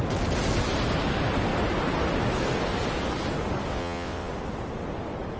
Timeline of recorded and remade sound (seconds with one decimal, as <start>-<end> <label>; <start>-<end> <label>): 0.0-3.7 recorded; 3.7-4.3 remade; 4.3-5.4 recorded